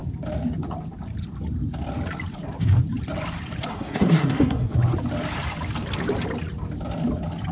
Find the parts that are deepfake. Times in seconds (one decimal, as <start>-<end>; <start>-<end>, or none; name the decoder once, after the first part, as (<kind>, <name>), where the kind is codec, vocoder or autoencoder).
3.7-4.7 (codec, SNAC)